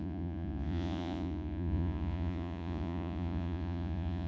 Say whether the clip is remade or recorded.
remade